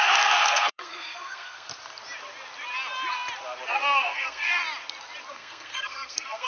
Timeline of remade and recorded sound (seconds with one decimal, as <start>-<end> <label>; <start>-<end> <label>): 0.0-1.7 remade; 1.7-3.7 recorded; 3.7-4.6 remade; 4.6-5.3 recorded; 5.3-6.5 remade